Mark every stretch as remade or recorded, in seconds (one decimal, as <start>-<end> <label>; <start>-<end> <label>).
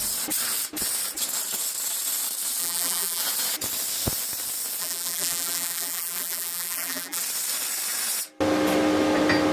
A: 0.0-2.6 recorded; 2.6-3.2 remade; 3.2-4.8 recorded; 4.8-7.2 remade; 7.2-9.5 recorded